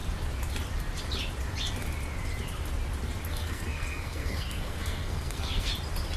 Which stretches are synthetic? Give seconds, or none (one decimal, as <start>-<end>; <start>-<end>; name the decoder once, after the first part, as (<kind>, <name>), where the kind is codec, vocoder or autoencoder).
3.3-5.7 (codec, SNAC)